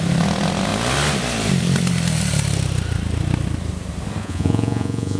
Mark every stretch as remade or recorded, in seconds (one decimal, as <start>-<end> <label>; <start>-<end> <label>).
0.0-4.2 recorded; 4.2-5.2 remade